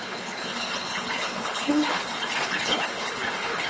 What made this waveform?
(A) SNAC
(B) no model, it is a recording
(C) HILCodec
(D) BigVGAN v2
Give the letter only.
C